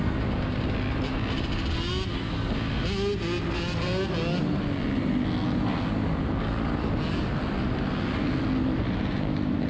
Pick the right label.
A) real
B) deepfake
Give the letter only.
A